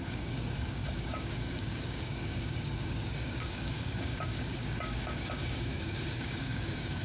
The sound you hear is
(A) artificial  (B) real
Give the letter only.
A